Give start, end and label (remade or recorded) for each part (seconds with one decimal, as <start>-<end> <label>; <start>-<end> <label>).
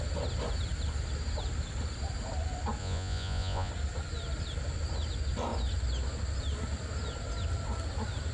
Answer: 0.0-2.8 recorded; 2.8-3.7 remade; 3.7-8.3 recorded